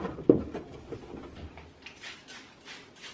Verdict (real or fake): real